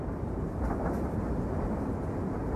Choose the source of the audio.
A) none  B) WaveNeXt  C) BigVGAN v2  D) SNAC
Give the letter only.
A